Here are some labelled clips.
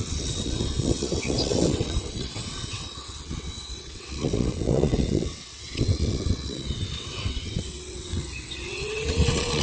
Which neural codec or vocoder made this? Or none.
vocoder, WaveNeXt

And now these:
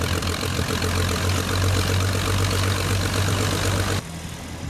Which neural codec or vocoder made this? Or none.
none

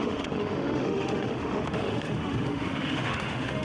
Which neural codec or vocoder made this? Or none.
autoencoder, DAC-VAE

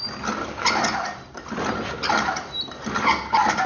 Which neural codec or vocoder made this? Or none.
none